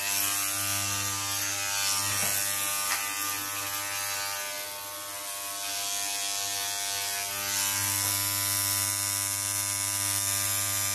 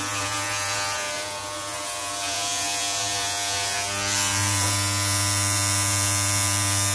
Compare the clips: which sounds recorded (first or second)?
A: first